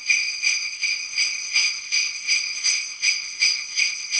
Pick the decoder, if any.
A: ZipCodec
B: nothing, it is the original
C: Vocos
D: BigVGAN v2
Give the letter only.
A